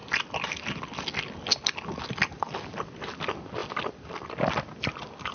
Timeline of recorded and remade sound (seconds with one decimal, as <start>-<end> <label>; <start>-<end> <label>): 0.0-5.3 recorded